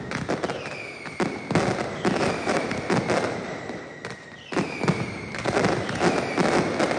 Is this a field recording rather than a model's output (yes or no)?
yes